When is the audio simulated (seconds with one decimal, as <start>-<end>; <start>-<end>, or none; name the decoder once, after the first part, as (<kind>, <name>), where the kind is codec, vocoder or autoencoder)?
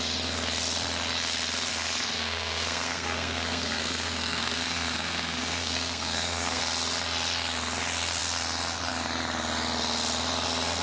1.7-6.6 (codec, SNAC)